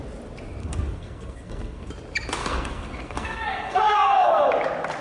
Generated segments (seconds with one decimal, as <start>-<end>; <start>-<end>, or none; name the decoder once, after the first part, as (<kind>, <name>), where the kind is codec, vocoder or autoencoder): 0.6-1.9 (codec, SNAC); 2.4-4.5